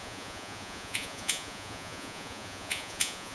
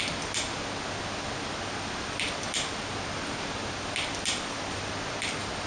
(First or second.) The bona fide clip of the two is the second